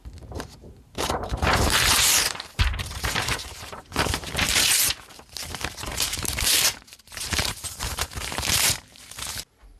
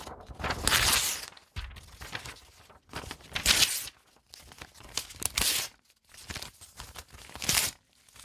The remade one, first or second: first